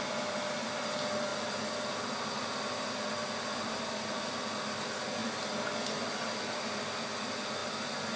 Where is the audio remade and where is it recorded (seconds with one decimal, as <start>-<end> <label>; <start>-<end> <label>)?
0.0-8.2 recorded